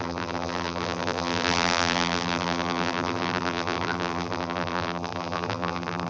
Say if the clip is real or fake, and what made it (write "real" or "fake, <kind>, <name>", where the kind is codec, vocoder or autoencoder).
fake, vocoder, BigVGAN v2